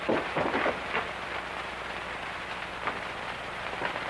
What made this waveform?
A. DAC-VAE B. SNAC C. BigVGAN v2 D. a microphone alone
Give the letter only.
D